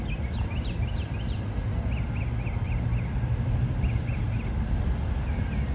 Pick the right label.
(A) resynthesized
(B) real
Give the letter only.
B